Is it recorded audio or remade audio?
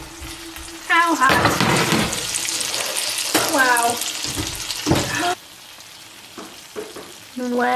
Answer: recorded